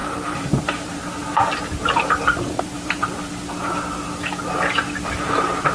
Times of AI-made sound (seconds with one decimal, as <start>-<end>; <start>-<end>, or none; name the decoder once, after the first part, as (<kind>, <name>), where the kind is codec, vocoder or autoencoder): 0.0-3.0 (vocoder, BigVGAN v2); 5.1-5.7

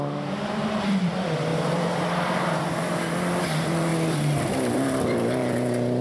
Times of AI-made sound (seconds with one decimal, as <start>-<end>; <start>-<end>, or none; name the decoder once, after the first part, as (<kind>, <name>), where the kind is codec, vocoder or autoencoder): 0.0-3.9 (vocoder, BigVGAN v2); 4.5-6.0